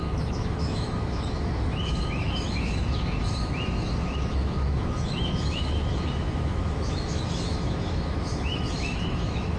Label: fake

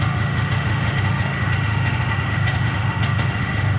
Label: fake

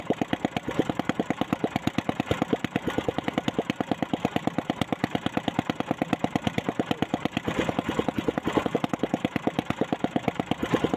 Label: real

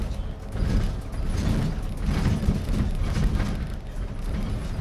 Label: real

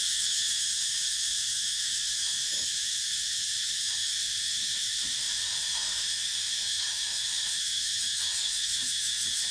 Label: fake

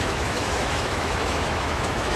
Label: fake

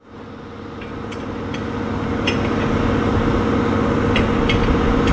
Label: real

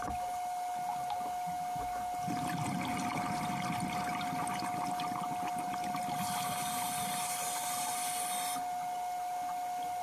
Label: real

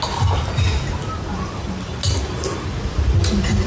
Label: real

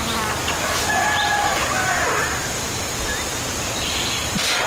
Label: real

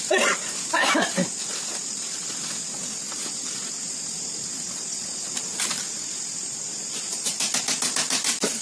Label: real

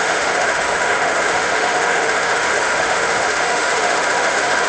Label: fake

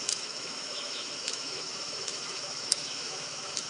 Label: fake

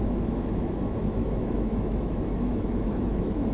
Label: fake